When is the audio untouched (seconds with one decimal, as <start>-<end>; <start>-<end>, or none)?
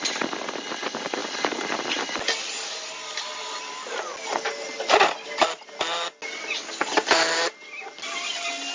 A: 0.0-8.7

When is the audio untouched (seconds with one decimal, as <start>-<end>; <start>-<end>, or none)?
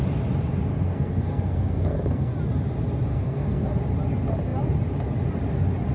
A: 0.0-0.7; 2.3-3.1; 3.8-5.9